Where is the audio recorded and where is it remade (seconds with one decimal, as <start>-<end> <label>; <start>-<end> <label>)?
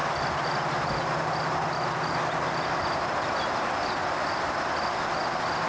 0.0-5.7 recorded